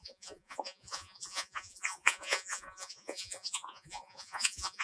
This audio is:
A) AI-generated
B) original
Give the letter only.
A